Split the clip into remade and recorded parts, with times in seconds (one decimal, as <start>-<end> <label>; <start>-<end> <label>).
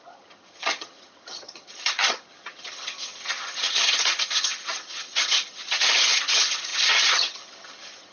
0.0-8.1 remade